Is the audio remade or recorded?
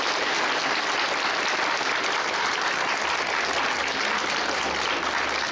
recorded